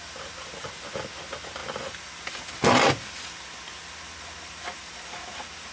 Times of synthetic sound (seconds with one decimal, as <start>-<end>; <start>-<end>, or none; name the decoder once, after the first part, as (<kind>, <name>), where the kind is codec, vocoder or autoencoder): none